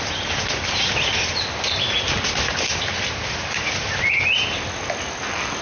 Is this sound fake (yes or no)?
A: no